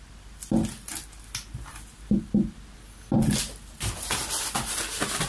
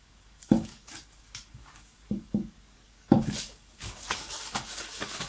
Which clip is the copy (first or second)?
second